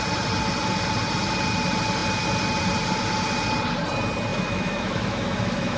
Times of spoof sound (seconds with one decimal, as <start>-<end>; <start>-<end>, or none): 4.3-5.8